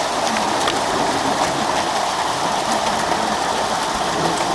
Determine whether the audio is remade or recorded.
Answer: recorded